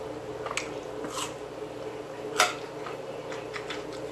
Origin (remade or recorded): recorded